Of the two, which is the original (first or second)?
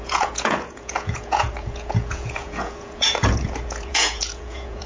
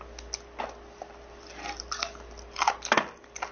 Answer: second